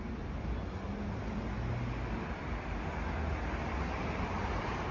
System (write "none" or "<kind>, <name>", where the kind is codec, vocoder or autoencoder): none